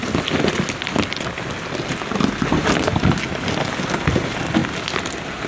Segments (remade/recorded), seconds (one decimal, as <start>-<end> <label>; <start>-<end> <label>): 0.0-5.5 recorded

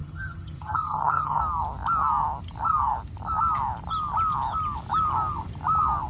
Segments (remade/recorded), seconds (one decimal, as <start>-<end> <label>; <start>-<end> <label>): 0.0-1.4 remade; 1.4-6.1 recorded

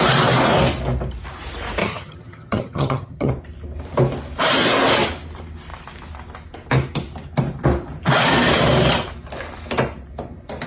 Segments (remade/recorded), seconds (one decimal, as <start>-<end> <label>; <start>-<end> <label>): 0.0-1.8 recorded; 1.8-3.3 remade; 3.3-10.7 recorded

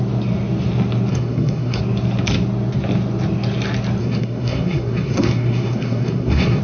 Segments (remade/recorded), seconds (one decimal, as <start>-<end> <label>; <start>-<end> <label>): 0.0-1.1 recorded; 1.1-1.8 remade; 1.8-4.0 recorded; 4.0-6.6 remade

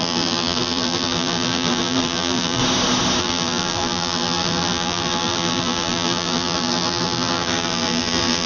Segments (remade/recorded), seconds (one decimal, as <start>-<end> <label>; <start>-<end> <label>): 0.0-2.6 remade; 2.6-3.2 recorded; 3.2-8.5 remade

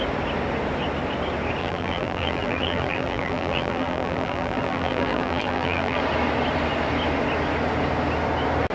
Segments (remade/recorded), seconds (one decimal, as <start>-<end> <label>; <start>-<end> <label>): 0.0-1.6 recorded; 1.6-6.0 remade; 6.0-8.7 recorded

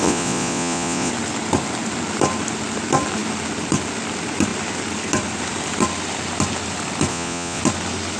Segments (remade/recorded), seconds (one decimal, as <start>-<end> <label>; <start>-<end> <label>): 0.0-1.1 remade; 1.1-7.1 recorded; 7.1-7.6 remade; 7.6-8.2 recorded

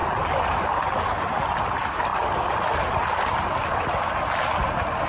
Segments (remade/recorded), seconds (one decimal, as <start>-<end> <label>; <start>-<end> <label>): 0.0-5.1 recorded